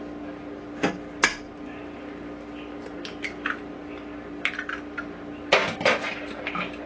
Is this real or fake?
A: real